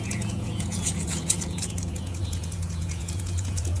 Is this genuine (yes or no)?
no